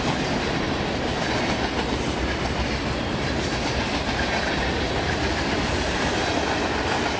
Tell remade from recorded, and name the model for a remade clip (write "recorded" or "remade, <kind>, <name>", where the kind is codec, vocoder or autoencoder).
recorded